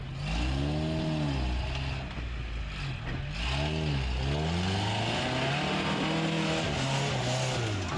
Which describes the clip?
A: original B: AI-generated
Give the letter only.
A